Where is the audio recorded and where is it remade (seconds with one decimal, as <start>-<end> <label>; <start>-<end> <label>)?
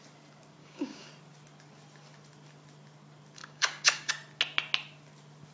0.0-0.6 recorded; 0.6-1.1 remade; 1.1-3.4 recorded; 3.4-4.1 remade; 4.1-5.5 recorded